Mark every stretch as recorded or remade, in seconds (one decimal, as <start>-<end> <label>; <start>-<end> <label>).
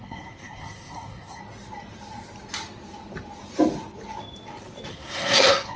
0.0-1.4 remade; 1.4-4.9 recorded; 4.9-5.8 remade